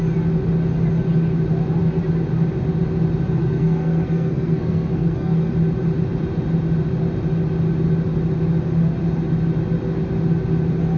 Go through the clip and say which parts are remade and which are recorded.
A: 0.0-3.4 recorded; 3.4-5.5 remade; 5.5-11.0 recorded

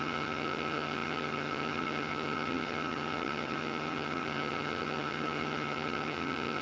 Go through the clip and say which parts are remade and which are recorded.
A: 0.0-6.6 remade

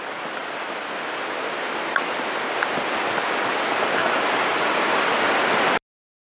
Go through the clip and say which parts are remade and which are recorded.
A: 0.0-4.0 recorded; 4.0-5.0 remade; 5.0-6.4 recorded